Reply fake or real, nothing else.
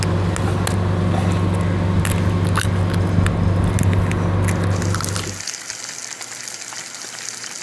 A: real